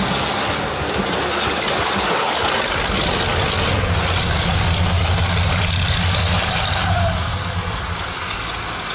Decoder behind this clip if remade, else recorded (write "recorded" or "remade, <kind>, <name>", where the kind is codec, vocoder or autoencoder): recorded